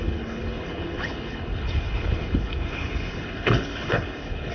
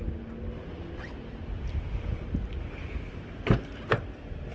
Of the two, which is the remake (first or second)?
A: first